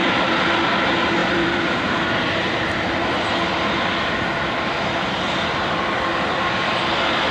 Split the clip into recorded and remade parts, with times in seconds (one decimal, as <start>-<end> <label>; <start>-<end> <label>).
0.0-0.5 remade; 0.5-1.2 recorded; 1.2-3.6 remade; 3.6-5.6 recorded; 5.6-6.8 remade; 6.8-7.3 recorded